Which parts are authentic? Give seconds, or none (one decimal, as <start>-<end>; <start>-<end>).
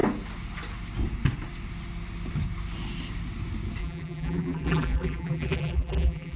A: 0.0-3.8